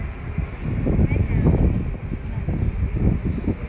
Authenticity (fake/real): real